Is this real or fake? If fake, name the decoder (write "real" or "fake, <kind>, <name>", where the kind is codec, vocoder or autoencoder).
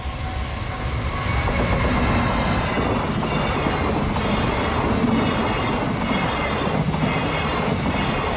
real